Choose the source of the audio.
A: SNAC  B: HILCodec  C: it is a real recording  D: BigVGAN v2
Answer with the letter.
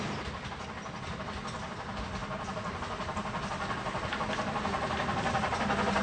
C